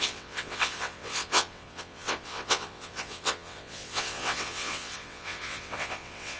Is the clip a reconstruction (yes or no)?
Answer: yes